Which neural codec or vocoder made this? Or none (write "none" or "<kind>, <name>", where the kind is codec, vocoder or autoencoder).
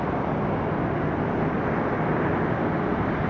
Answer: none